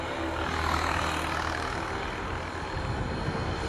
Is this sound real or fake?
real